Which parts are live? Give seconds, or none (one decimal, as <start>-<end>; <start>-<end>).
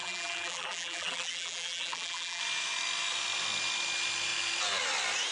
2.4-5.3